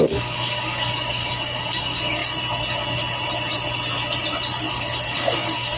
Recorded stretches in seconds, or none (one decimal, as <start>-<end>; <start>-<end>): 2.2-4.7